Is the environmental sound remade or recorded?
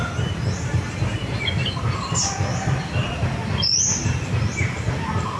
recorded